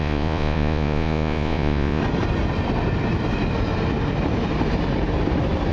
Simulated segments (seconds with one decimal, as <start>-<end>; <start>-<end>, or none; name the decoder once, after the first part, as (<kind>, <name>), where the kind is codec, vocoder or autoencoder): 0.0-2.0 (vocoder, Vocos)